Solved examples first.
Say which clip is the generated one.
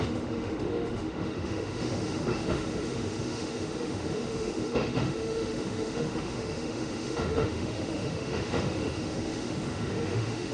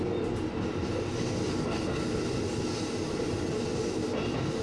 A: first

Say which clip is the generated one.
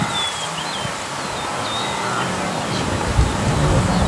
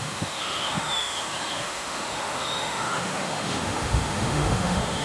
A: second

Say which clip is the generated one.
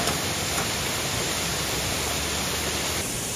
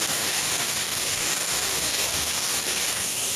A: second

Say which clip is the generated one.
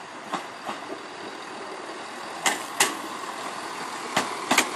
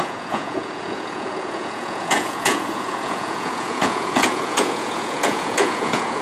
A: second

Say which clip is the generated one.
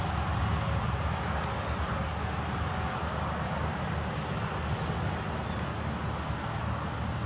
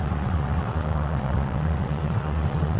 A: second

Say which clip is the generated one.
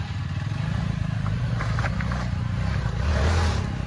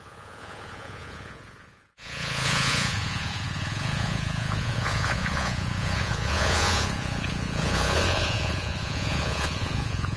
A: second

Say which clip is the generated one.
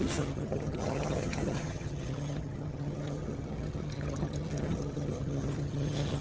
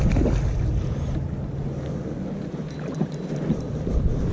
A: first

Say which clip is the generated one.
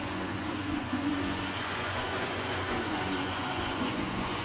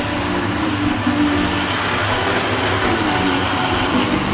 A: first